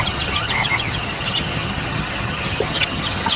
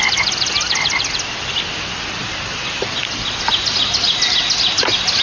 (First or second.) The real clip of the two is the second